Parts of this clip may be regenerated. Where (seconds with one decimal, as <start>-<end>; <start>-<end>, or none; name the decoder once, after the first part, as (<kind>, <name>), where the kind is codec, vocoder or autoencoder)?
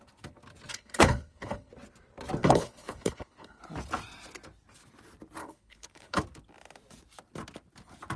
0.7-1.7 (codec, HILCodec); 2.4-3.6; 5.4-6.2